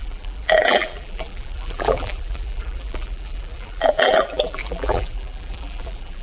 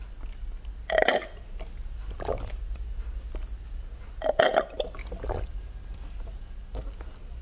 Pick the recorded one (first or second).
second